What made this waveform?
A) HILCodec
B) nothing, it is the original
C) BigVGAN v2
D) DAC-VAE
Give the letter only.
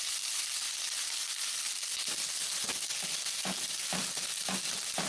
B